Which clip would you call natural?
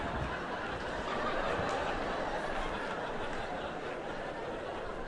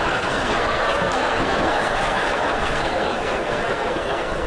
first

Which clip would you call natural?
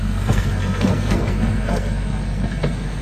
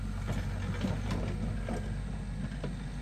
second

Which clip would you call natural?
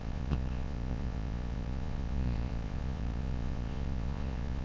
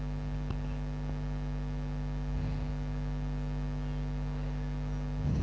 second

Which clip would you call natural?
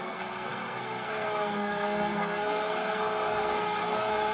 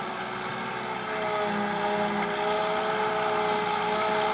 second